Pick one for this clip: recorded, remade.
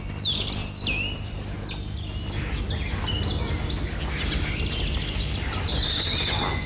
recorded